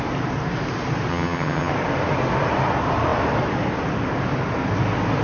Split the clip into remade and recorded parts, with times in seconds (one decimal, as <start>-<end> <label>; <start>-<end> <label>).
0.0-1.1 recorded; 1.1-1.7 remade; 1.7-5.2 recorded